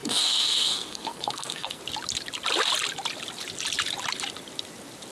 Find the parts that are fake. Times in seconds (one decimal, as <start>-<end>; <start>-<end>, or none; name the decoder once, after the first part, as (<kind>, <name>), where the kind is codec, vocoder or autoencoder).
0.0-1.8 (codec, SNAC)